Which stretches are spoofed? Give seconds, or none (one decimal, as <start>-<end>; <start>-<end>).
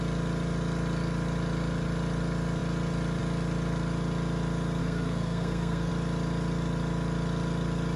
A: 4.8-5.9